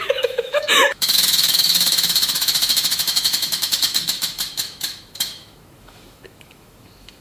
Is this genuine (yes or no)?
no